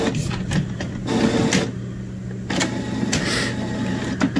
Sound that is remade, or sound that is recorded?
recorded